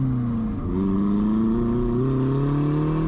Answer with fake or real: real